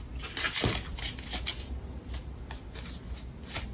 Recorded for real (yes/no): yes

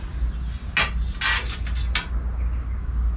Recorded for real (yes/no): yes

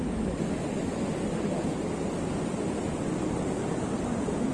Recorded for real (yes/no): yes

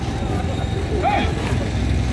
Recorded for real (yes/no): yes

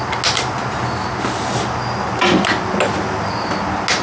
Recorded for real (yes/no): yes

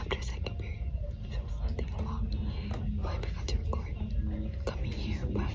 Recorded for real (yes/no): yes